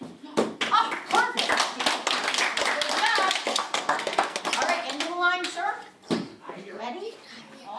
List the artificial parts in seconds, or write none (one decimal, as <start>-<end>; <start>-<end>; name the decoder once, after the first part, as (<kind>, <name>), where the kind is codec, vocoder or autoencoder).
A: 3.5-4.4 (codec, SNAC); 6.3-6.8